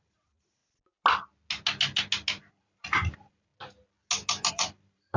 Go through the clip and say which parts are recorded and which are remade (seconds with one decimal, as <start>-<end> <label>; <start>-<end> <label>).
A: 0.0-0.6 remade; 0.6-2.5 recorded; 2.5-3.5 remade; 3.5-4.5 recorded; 4.5-5.2 remade